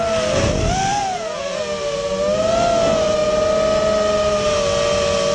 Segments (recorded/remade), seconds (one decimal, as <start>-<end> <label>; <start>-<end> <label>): 0.0-0.9 recorded; 0.9-1.6 remade; 1.6-5.3 recorded